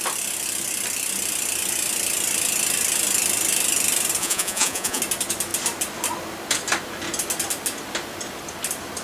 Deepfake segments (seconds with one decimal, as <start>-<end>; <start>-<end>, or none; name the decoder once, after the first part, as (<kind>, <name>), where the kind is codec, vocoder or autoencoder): 4.2-5.0 (vocoder, Vocos)